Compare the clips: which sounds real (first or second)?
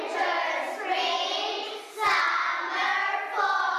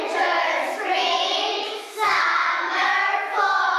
first